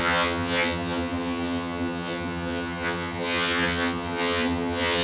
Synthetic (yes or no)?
yes